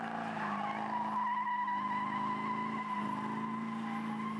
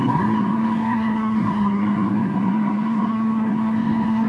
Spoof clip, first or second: second